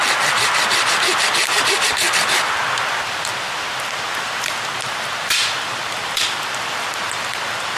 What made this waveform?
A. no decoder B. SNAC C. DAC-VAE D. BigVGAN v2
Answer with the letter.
D